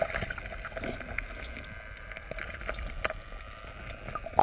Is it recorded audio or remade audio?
recorded